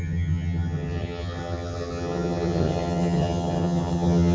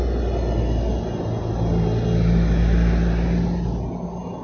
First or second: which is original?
second